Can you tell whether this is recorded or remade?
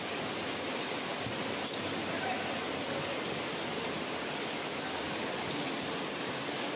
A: recorded